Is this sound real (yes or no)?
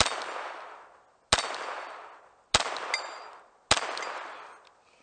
yes